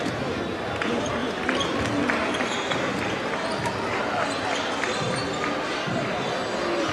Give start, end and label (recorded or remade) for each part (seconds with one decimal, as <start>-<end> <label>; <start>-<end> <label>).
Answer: 0.0-6.9 recorded